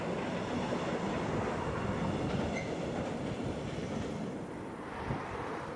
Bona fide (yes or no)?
yes